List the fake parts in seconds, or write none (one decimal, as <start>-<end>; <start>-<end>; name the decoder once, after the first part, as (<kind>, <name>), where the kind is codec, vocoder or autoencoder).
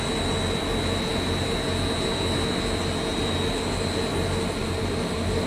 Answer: 4.6-5.5 (vocoder, BigVGAN v2)